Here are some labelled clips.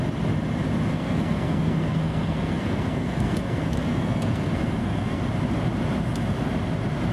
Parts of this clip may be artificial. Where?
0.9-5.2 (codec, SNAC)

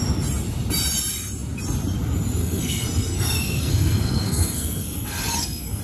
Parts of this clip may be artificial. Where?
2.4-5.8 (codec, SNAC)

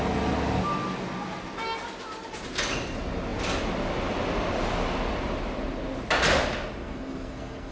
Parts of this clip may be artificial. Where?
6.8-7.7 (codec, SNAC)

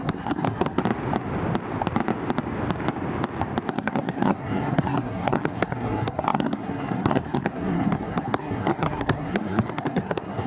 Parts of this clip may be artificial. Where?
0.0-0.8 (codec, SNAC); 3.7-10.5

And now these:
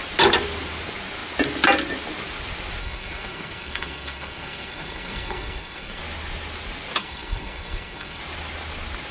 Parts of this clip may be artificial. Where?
2.8-6.0 (codec, SNAC); 7.0-8.2

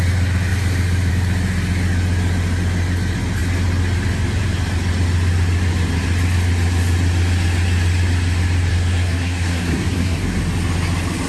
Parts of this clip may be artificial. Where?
8.7-10.4 (codec, SNAC)

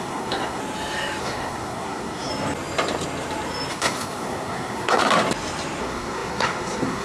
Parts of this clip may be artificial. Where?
0.0-0.6 (codec, SNAC); 1.2-2.3; 3.7-5.0; 5.8-7.0

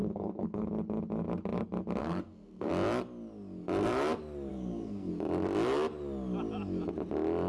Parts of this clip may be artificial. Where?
0.0-0.7 (codec, SNAC); 2.0-2.7; 4.5-5.1